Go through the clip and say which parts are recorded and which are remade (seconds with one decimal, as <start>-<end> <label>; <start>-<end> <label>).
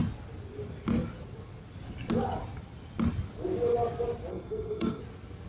0.0-4.3 recorded; 4.3-5.0 remade; 5.0-5.5 recorded